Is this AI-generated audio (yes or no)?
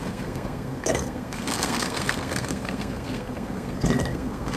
yes